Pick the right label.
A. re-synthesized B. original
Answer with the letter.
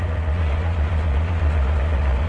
A